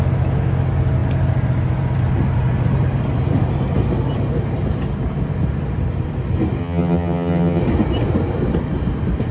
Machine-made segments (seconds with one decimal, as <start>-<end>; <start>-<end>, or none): 6.6-7.6